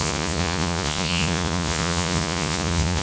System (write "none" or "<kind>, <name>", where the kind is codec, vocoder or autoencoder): vocoder, Vocos